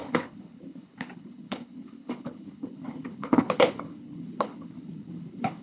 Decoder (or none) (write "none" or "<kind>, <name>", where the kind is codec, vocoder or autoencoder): codec, HILCodec